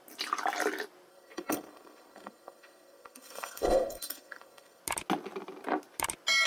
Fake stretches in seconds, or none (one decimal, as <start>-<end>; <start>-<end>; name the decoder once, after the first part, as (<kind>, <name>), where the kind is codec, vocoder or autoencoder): 1.1-4.8 (codec, SNAC)